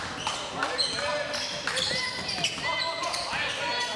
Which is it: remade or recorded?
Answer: recorded